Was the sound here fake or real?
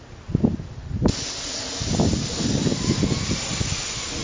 real